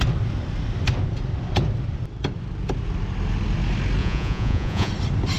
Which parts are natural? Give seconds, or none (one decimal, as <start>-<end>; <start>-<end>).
0.0-4.0; 4.9-5.4